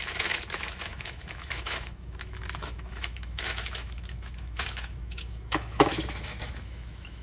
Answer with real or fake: fake